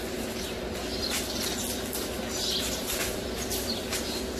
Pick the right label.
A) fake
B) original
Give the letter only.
B